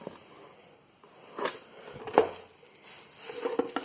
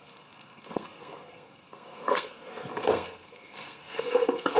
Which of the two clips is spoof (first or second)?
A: second